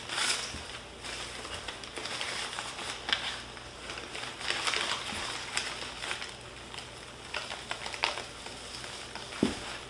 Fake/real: real